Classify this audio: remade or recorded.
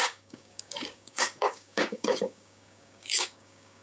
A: remade